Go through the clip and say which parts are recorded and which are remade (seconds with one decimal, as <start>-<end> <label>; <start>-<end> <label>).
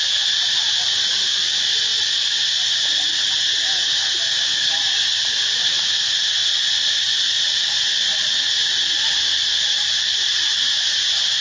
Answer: 0.0-11.4 recorded